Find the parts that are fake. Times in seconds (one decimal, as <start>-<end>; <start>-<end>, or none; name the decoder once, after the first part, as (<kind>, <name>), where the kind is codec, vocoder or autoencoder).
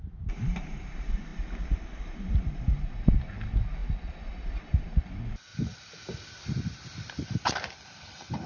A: none